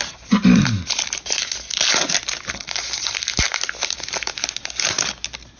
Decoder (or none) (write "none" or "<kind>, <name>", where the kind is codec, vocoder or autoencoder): none